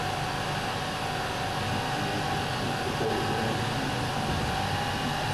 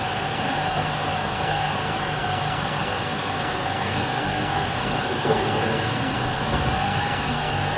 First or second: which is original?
first